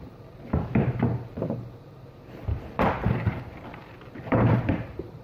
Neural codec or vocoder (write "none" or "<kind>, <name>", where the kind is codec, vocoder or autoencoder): vocoder, BigVGAN v2